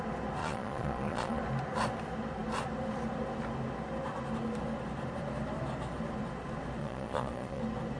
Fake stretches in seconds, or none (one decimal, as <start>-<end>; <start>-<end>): 0.4-1.4; 6.8-7.6